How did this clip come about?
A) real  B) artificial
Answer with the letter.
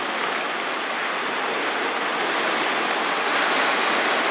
A